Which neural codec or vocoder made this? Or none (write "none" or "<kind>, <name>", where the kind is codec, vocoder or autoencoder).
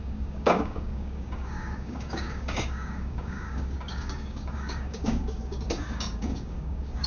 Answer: codec, DAC